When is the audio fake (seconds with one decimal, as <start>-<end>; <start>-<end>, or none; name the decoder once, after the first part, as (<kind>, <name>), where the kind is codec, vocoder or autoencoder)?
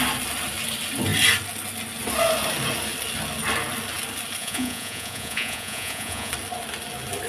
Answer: 4.4-6.3 (vocoder, Vocos)